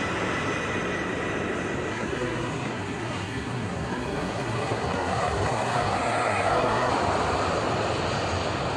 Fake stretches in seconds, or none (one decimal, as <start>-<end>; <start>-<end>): 1.9-6.9